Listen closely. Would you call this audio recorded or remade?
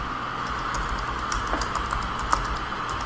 recorded